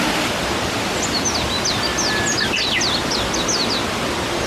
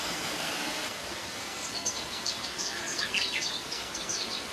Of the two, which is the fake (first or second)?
second